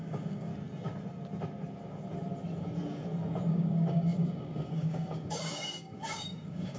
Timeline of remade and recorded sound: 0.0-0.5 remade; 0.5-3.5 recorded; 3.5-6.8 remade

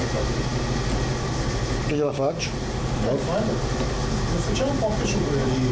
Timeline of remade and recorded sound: 0.0-5.7 recorded